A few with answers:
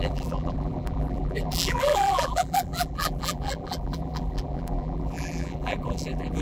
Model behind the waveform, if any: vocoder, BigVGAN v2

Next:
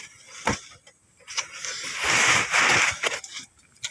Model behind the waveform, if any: none